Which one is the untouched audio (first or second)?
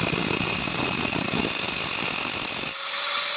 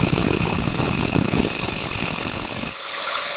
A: first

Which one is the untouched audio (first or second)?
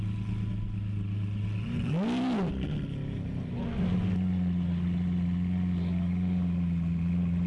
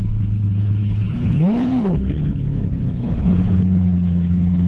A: first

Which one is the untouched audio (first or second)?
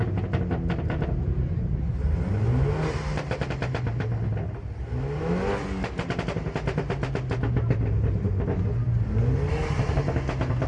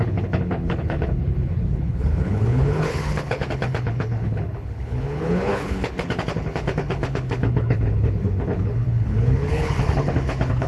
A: first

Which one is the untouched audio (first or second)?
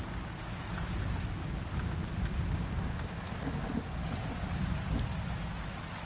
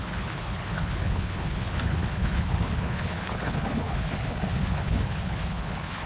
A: first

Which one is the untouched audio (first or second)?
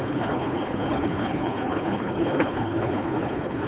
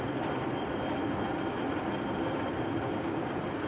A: second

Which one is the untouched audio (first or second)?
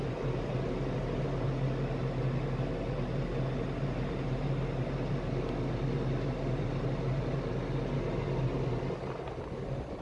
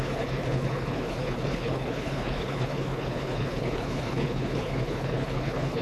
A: first